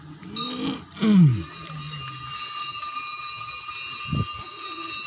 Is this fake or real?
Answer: real